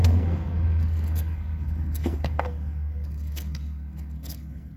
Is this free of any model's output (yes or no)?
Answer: no